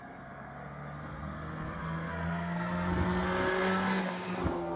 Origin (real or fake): fake